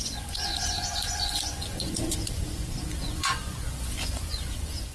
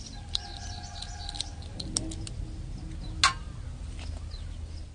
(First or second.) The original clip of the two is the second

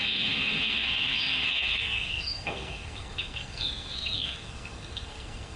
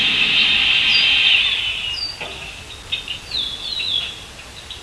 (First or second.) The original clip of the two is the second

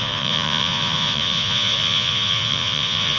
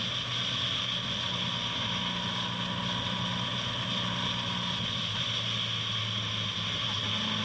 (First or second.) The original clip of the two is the second